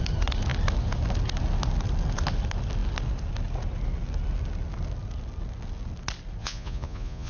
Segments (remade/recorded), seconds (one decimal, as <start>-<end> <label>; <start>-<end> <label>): 0.0-6.4 recorded; 6.4-7.3 remade